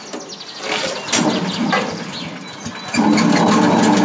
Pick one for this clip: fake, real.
real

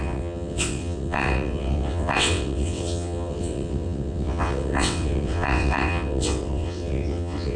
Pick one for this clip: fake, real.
fake